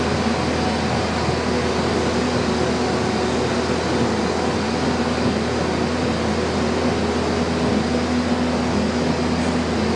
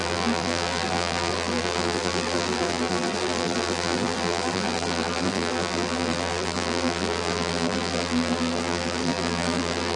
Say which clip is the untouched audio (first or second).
first